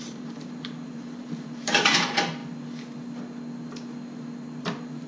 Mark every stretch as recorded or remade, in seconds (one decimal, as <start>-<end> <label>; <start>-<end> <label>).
0.0-2.4 remade; 2.4-4.6 recorded; 4.6-5.1 remade

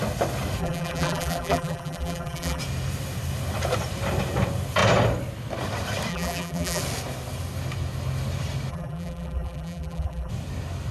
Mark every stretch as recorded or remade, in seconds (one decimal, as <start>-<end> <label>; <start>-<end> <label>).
0.0-0.6 recorded; 0.6-2.6 remade; 2.6-6.1 recorded; 6.1-6.8 remade; 6.8-8.7 recorded; 8.7-10.3 remade; 10.3-10.9 recorded

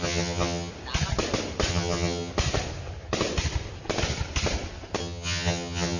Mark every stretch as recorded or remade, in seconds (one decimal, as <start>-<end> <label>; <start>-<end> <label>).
0.0-0.7 remade; 0.7-1.7 recorded; 1.7-2.3 remade; 2.3-5.0 recorded; 5.0-6.0 remade

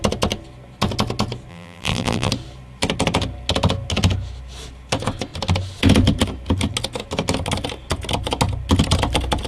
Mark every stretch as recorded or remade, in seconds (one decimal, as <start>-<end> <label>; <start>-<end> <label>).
0.0-1.5 recorded; 1.5-2.3 remade; 2.3-9.5 recorded

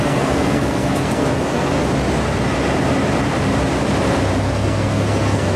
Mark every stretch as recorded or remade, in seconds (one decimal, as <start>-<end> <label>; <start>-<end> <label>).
0.0-1.8 remade; 1.8-4.4 recorded; 4.4-5.6 remade

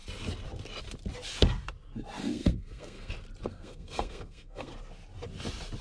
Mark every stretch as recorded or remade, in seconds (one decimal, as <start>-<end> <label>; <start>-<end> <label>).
0.0-2.2 recorded; 2.2-3.1 remade; 3.1-3.5 recorded; 3.5-4.7 remade; 4.7-5.8 recorded